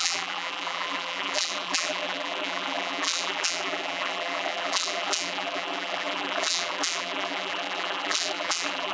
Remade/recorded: remade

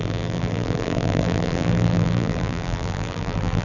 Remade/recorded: remade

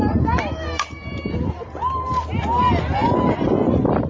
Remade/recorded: recorded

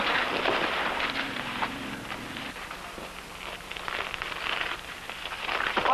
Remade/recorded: remade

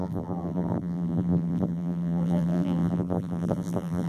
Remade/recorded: remade